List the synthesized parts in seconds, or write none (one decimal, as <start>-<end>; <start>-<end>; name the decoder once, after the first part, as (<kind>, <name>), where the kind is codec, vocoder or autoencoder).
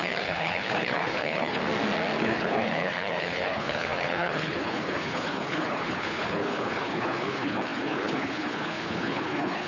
0.0-1.6 (codec, HILCodec); 2.2-9.7